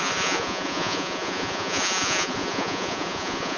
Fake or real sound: fake